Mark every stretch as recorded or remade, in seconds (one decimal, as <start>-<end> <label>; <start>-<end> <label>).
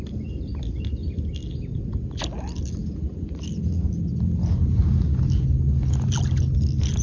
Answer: 0.0-7.0 recorded